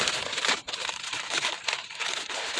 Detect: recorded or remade recorded